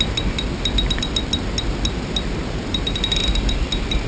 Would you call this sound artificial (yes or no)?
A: no